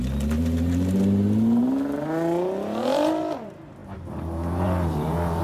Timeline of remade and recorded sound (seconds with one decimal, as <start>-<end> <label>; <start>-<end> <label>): 0.0-3.8 recorded; 3.8-5.4 remade